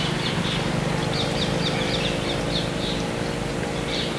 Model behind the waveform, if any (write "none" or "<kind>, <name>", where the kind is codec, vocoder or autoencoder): none